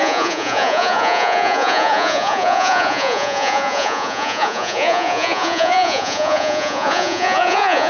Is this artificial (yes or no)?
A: yes